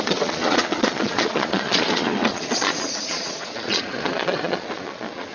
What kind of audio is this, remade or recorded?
remade